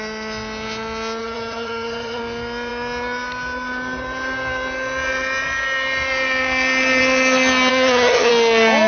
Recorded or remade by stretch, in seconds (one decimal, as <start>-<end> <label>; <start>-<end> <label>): 0.0-1.2 recorded; 1.2-2.2 remade; 2.2-7.7 recorded; 7.7-8.3 remade; 8.3-8.9 recorded